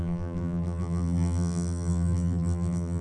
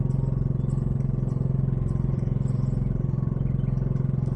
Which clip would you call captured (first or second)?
second